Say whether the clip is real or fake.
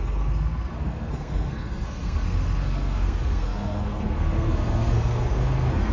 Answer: fake